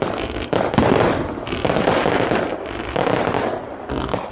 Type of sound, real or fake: real